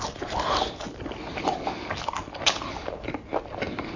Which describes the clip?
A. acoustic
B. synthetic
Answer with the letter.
A